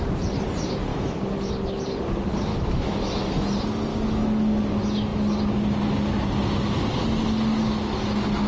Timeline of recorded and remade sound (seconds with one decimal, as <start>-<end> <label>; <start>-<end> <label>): 0.0-0.9 recorded; 0.9-1.5 remade; 1.5-2.5 recorded; 2.5-3.3 remade; 3.3-3.9 recorded; 3.9-4.6 remade; 4.6-8.5 recorded